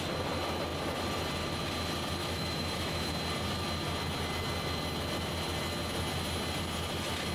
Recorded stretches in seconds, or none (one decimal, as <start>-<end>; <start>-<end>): 0.0-2.2; 3.1-7.3